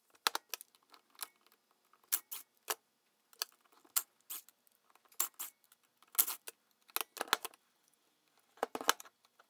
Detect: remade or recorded recorded